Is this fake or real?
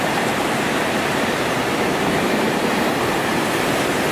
fake